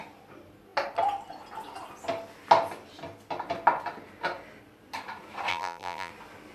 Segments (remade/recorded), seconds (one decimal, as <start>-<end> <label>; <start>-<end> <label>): 0.0-5.5 recorded; 5.5-6.1 remade; 6.1-6.5 recorded